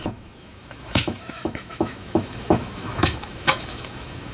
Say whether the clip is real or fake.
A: fake